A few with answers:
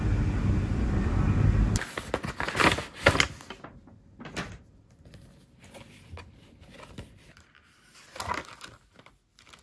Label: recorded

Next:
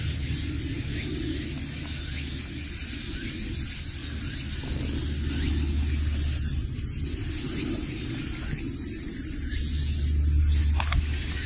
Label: recorded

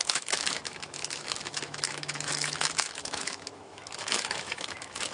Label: remade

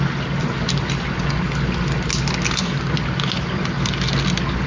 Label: recorded